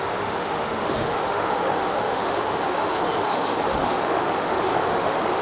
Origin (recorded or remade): remade